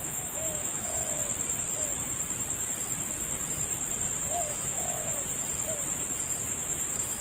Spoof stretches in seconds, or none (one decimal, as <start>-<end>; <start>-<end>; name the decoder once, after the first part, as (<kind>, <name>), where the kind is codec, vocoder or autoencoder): 0.0-1.0 (autoencoder, DAC-VAE); 4.5-5.1; 6.4-7.2

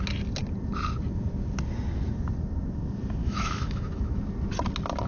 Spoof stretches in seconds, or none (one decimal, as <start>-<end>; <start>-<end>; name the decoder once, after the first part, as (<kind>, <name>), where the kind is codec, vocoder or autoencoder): 3.2-4.2 (autoencoder, DAC-VAE)

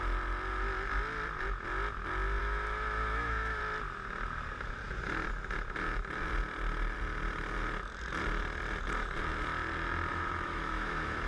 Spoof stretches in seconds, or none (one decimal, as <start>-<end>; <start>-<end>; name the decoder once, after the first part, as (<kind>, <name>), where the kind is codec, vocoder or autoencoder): 2.4-3.6 (autoencoder, DAC-VAE); 10.1-11.3

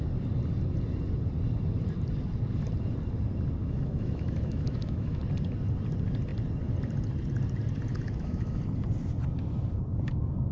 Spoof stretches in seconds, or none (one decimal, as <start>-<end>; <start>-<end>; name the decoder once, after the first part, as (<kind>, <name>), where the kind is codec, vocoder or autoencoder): 3.6-5.2 (autoencoder, DAC-VAE); 7.9-8.6

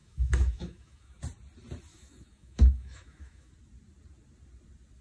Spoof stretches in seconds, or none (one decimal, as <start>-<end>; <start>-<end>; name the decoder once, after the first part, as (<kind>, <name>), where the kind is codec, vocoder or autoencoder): 0.0-1.2 (autoencoder, DAC-VAE); 1.9-3.5

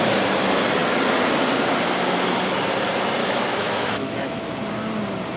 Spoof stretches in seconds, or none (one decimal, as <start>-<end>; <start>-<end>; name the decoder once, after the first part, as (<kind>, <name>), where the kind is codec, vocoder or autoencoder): 3.2-4.4 (autoencoder, DAC-VAE)